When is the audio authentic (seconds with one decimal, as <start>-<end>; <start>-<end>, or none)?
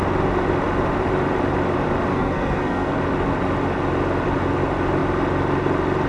0.0-2.1; 3.0-6.1